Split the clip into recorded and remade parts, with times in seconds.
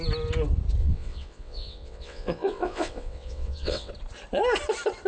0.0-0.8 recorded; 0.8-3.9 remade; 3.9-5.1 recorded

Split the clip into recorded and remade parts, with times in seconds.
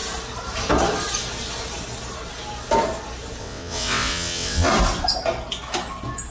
0.0-3.4 recorded; 3.4-4.7 remade; 4.7-6.3 recorded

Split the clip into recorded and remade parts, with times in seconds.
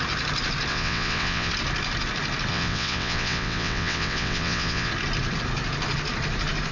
0.0-0.7 recorded; 0.7-1.5 remade; 1.5-2.5 recorded; 2.5-4.9 remade; 4.9-6.7 recorded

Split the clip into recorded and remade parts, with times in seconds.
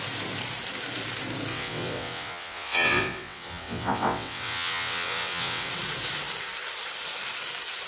0.0-1.5 recorded; 1.5-5.7 remade; 5.7-7.9 recorded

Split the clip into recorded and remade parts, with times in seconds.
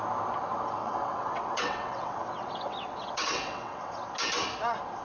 0.0-0.8 recorded; 0.8-3.8 remade; 3.8-5.0 recorded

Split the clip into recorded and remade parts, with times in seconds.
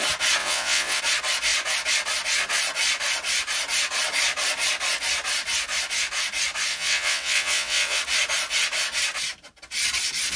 0.0-0.4 recorded; 0.4-1.0 remade; 1.0-6.7 recorded; 6.7-8.0 remade; 8.0-10.4 recorded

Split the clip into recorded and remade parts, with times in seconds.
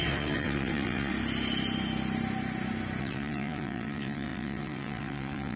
0.0-1.1 remade; 1.1-3.0 recorded; 3.0-5.6 remade